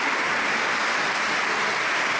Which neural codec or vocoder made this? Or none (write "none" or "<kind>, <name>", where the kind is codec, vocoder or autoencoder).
none